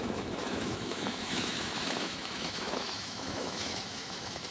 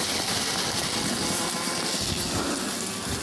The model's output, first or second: first